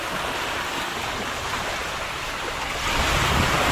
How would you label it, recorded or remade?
recorded